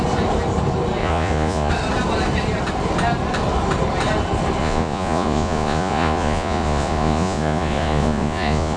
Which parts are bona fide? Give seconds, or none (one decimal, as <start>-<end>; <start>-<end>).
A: 0.0-1.0; 1.7-4.6